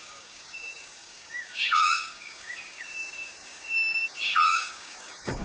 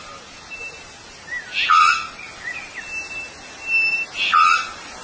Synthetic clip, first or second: first